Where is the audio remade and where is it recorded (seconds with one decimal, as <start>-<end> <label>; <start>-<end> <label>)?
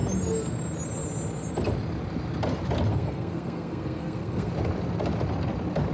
0.0-2.9 recorded; 2.9-4.5 remade; 4.5-5.9 recorded